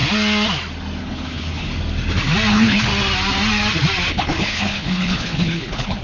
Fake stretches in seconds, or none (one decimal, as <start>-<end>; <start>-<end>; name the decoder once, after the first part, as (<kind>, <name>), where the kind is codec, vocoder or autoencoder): 1.0-1.7 (codec, HILCodec); 2.5-2.9; 4.1-6.0